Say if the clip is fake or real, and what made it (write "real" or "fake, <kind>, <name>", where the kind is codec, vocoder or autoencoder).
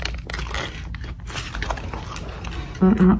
real